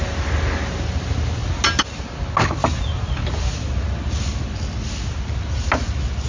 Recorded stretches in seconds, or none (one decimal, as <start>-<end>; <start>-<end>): 0.0-6.3